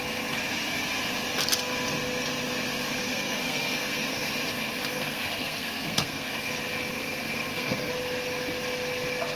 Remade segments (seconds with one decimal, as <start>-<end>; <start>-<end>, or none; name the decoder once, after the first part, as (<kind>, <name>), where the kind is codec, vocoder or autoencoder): 3.0-4.3 (codec, SNAC); 4.9-6.5; 6.9-7.9